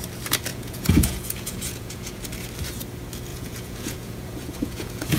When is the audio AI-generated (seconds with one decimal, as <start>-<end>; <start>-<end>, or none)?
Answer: 0.5-2.2; 3.3-5.2